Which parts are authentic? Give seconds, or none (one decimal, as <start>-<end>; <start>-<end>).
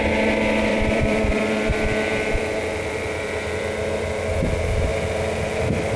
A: 0.0-0.7; 4.3-4.9